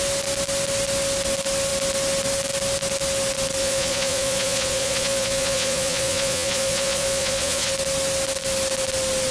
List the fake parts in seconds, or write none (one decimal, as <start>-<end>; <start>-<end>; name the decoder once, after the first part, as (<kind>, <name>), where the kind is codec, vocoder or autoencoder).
3.6-7.7 (vocoder, Vocos)